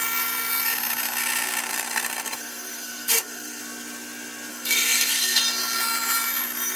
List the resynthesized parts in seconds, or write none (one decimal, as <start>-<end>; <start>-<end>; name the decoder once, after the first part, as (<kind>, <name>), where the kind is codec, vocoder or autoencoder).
1.7-3.6 (codec, SNAC); 4.5-5.4